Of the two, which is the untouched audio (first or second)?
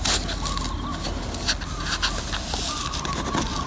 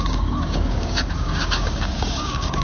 first